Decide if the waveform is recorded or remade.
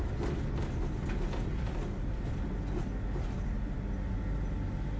recorded